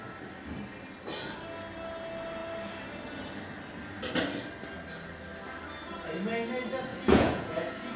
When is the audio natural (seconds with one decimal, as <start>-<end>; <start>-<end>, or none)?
0.0-6.9